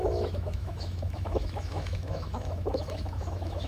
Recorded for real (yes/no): no